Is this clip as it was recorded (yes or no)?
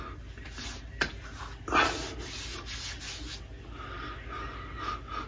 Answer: yes